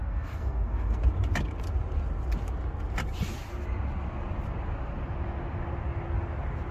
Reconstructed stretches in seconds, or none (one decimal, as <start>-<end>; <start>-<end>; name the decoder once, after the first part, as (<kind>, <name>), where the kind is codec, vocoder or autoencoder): 0.0-1.0 (codec, SNAC)